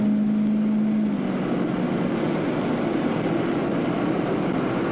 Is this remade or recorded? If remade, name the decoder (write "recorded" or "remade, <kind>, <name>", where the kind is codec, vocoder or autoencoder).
recorded